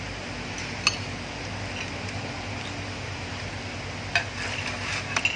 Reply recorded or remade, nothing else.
recorded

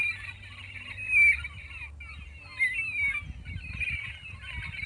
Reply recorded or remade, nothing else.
recorded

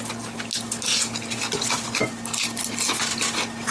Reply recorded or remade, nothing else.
recorded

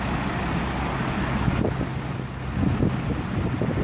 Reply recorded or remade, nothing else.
recorded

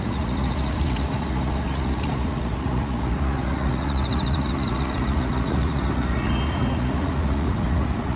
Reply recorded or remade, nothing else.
remade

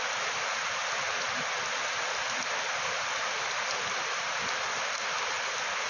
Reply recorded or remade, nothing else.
recorded